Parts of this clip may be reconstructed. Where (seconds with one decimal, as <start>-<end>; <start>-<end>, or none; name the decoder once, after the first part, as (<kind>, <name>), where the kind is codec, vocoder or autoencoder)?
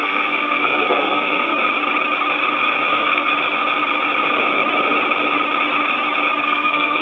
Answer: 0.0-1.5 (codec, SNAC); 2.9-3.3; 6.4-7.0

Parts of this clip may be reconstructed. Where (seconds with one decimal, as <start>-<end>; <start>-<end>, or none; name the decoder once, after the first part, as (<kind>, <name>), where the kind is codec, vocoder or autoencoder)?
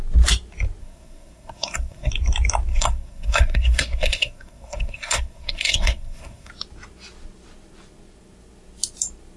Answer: 0.8-2.1 (codec, SNAC); 2.7-6.5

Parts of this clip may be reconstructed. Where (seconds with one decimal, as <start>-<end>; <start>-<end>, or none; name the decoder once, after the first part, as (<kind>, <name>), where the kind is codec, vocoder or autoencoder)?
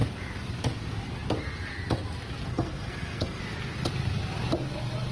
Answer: 2.5-3.4 (codec, SNAC)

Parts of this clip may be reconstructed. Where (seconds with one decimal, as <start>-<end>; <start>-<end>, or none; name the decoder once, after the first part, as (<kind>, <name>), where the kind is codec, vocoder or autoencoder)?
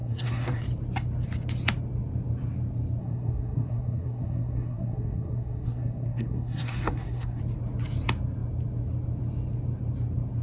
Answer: 0.0-0.6 (codec, SNAC); 3.0-7.4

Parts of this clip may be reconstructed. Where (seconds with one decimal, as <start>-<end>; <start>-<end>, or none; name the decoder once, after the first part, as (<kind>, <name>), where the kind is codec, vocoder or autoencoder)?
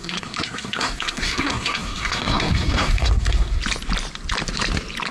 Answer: 0.0-3.6 (codec, SNAC)